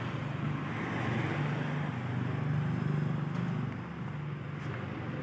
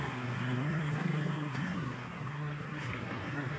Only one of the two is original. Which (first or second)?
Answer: first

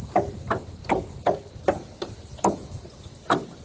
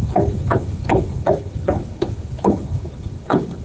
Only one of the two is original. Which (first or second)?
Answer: first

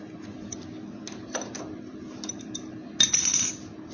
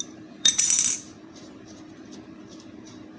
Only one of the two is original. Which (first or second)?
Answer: first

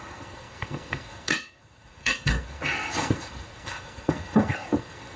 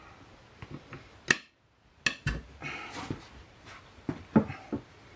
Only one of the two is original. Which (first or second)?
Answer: second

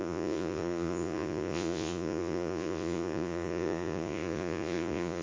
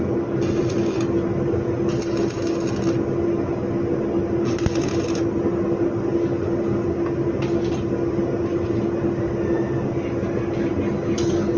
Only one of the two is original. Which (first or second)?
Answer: second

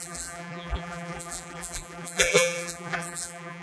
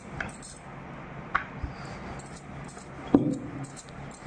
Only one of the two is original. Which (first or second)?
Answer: second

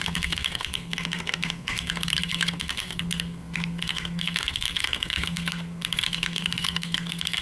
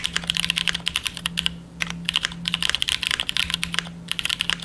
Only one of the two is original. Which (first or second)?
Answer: second